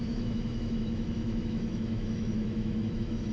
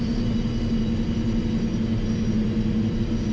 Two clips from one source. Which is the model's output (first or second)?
first